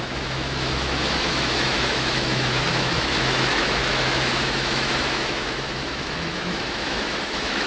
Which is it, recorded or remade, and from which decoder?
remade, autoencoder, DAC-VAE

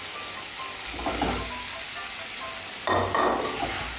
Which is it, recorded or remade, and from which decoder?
recorded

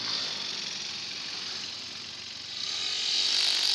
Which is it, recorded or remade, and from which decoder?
recorded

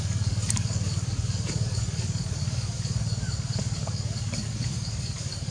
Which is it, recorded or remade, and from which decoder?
remade, codec, DAC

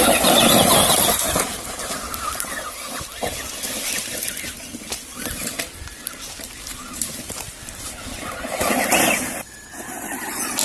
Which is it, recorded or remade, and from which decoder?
recorded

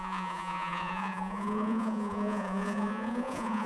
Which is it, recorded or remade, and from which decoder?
remade, vocoder, Vocos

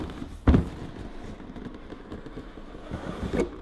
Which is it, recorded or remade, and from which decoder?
recorded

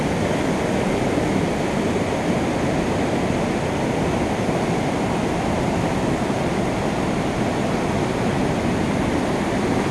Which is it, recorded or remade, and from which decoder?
recorded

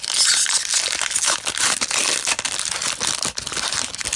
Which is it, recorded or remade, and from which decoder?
recorded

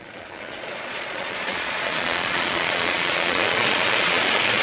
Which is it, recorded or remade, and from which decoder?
remade, vocoder, Vocos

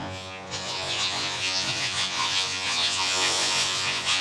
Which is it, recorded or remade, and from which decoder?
remade, vocoder, Vocos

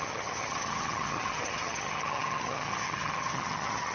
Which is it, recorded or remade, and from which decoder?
remade, vocoder, HiFi-GAN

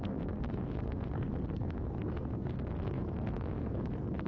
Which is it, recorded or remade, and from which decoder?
remade, codec, SNAC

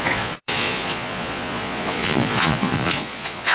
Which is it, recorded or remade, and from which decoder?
remade, vocoder, Vocos